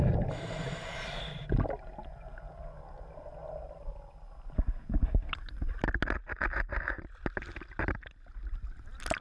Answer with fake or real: real